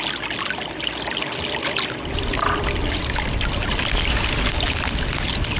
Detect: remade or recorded recorded